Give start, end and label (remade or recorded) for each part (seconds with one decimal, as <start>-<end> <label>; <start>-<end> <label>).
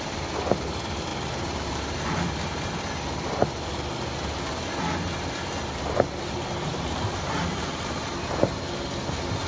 0.0-1.1 recorded; 1.1-2.3 remade; 2.3-6.7 recorded; 6.7-8.1 remade; 8.1-9.5 recorded